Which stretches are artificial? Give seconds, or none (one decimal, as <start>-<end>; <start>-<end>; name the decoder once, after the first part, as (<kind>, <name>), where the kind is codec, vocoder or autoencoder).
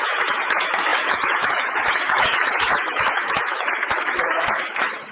0.0-5.1 (autoencoder, DAC-VAE)